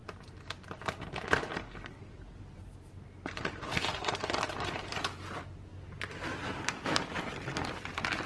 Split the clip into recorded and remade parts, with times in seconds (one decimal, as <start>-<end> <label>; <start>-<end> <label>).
0.0-4.4 recorded; 4.4-5.7 remade; 5.7-6.9 recorded; 6.9-8.3 remade